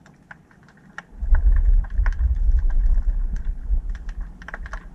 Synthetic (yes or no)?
no